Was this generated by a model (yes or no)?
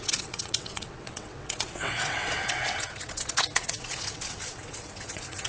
yes